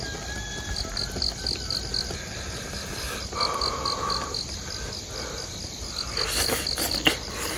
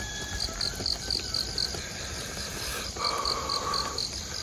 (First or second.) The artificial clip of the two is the second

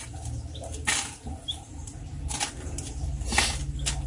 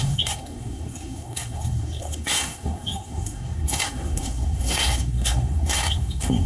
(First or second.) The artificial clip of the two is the second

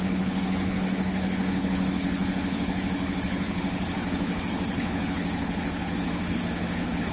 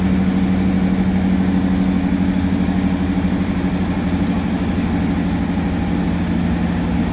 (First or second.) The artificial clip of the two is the first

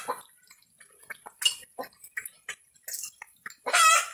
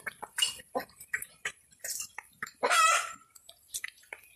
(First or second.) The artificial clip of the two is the second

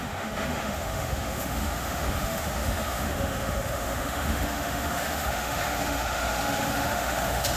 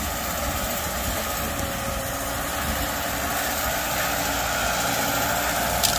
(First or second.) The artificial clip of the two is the first